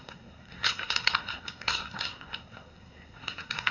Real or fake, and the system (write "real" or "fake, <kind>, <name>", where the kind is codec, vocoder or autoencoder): fake, codec, SNAC